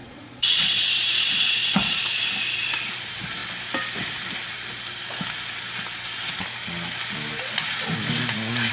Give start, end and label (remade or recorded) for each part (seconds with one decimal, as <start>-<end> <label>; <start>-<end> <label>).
0.0-2.2 remade; 2.2-8.7 recorded